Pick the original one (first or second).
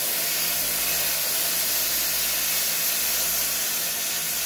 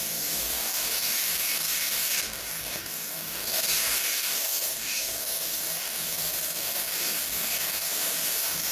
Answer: first